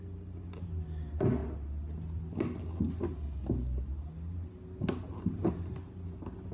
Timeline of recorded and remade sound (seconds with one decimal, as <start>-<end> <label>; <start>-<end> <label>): 0.0-6.5 recorded